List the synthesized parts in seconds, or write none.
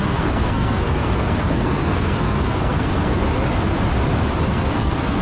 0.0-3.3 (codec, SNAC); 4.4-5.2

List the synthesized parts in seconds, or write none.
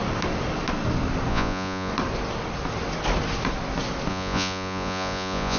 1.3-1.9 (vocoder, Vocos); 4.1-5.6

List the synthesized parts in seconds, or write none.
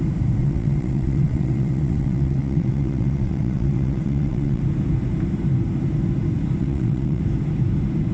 0.4-4.6 (vocoder, WaveNeXt); 6.6-7.2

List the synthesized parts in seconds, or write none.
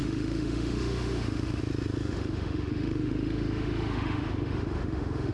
0.0-1.6 (autoencoder, DAC-VAE); 2.0-5.3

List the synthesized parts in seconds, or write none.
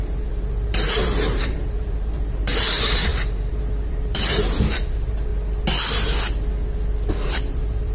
0.0-5.3 (vocoder, BigVGAN v2); 7.1-7.9